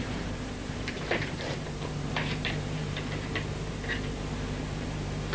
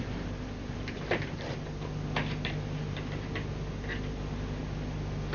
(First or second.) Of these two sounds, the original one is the second